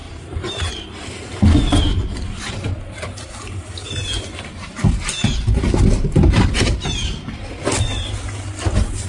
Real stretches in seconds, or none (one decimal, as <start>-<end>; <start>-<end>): 0.0-9.1